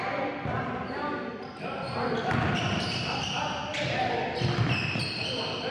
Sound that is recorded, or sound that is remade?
recorded